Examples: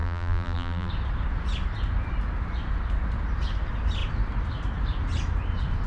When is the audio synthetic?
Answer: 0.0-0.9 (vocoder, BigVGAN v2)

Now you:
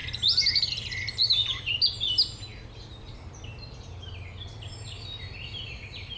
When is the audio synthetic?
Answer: none

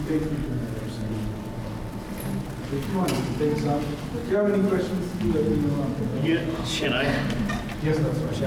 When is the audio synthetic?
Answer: none

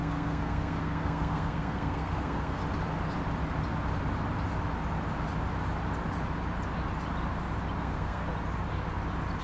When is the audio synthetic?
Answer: 0.0-2.6 (codec, SNAC); 7.8-8.3

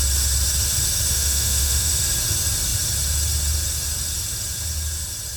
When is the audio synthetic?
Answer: 1.1-1.9 (autoencoder, DAC-VAE)

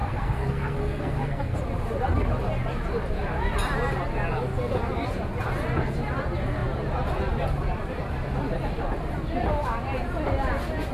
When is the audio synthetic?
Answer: 0.0-1.6 (codec, SNAC)

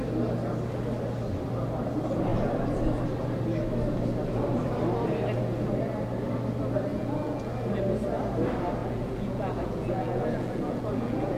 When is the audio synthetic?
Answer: 6.9-7.5 (vocoder, Vocos); 8.8-11.4

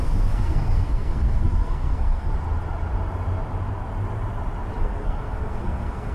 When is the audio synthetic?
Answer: 0.0-2.3 (codec, SNAC); 4.8-6.1